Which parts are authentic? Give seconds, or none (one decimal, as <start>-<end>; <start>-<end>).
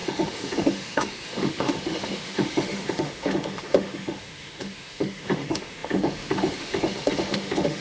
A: none